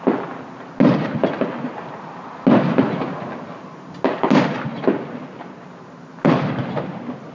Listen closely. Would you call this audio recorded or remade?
recorded